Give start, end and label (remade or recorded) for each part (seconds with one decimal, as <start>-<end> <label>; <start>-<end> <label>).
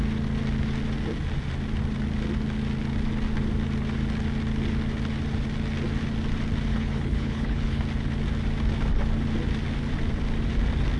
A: 0.0-6.7 recorded; 6.7-7.8 remade; 7.8-11.0 recorded